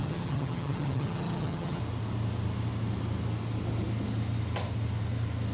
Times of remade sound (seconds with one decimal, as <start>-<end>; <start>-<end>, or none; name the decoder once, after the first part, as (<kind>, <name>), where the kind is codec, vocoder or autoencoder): 0.0-1.8 (vocoder, HiFi-GAN)

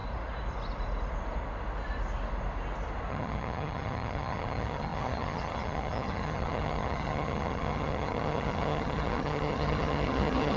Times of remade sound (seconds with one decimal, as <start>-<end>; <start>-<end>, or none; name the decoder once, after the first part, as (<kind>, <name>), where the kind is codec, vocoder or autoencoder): 3.1-10.6 (vocoder, HiFi-GAN)

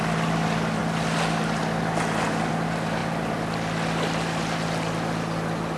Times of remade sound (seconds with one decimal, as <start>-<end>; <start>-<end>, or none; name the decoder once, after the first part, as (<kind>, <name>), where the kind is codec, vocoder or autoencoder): none

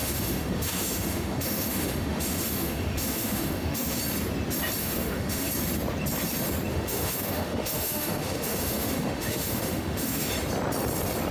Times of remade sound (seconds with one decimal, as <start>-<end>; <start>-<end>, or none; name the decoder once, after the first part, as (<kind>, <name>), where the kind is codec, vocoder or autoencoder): 0.0-4.0 (autoencoder, DAC-VAE); 4.8-5.5; 6.7-10.3

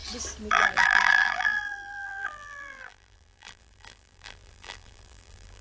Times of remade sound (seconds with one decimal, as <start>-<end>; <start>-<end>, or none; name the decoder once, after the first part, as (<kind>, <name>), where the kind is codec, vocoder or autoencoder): 0.5-5.6 (vocoder, BigVGAN v2)

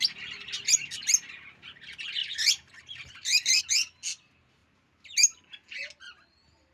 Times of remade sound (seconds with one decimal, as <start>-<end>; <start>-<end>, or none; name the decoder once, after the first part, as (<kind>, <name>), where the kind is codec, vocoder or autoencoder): 2.2-3.6 (vocoder, BigVGAN v2)

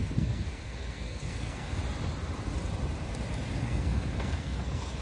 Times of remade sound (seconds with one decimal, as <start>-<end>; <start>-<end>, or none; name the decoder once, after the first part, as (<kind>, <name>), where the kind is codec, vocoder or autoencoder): 0.0-1.8 (codec, SNAC); 3.6-5.0